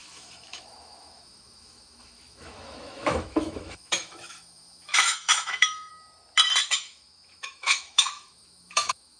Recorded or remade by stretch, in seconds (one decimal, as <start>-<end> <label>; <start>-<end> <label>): 0.0-5.9 remade; 5.9-6.6 recorded; 6.6-9.2 remade